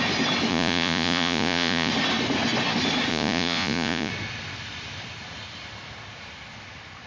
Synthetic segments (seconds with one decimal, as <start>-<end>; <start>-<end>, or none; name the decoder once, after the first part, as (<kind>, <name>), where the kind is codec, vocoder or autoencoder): 0.5-1.9 (vocoder, Vocos); 3.1-4.1